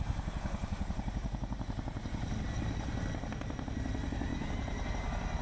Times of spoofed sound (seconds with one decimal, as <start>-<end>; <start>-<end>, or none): 0.6-3.0; 4.3-5.4

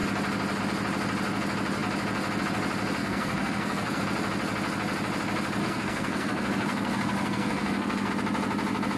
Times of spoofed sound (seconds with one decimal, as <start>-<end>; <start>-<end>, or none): 3.0-4.0; 5.6-8.1

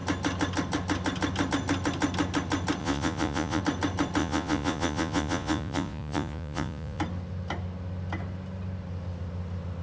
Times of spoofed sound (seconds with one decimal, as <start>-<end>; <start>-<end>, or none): 2.8-3.6; 4.2-7.0

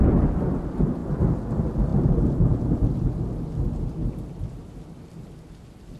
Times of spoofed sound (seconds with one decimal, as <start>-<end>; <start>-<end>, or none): none

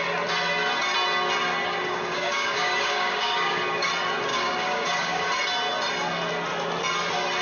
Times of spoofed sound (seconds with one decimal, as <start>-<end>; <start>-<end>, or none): 1.6-3.9; 4.3-5.3

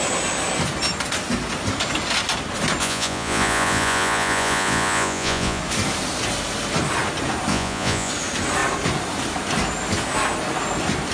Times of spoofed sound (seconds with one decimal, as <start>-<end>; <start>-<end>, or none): 2.8-5.6; 7.5-8.1

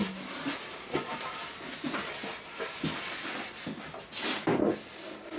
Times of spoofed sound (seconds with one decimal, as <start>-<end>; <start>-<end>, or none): none